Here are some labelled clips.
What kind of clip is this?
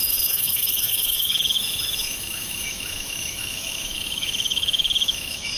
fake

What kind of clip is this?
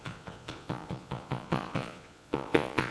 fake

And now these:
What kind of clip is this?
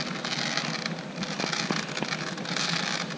real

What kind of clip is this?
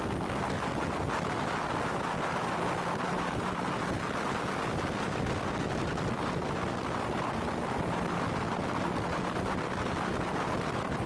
real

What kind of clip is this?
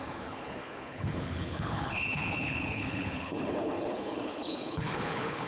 fake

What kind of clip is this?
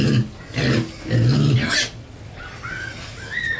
real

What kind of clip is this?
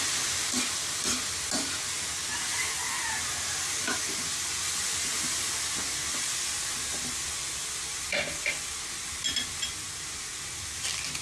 real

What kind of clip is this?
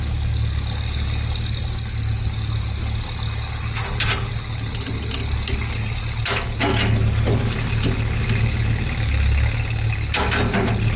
real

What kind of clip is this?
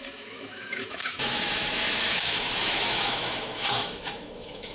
fake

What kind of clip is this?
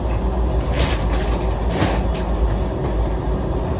real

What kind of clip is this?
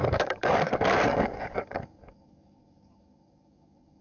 fake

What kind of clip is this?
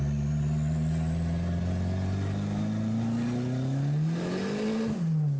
real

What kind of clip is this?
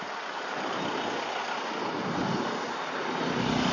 real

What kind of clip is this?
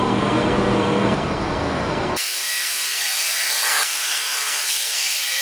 fake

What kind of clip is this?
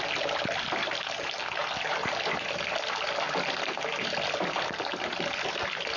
real